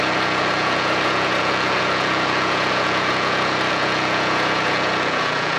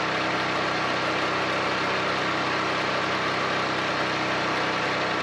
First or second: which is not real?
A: first